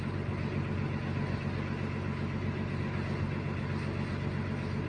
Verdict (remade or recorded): recorded